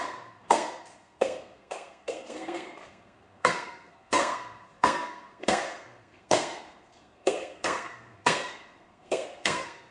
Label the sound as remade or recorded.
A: remade